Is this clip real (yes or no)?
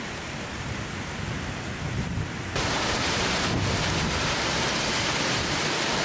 no